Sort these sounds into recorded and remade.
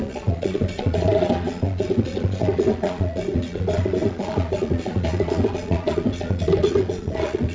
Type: remade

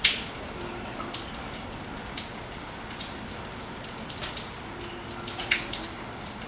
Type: recorded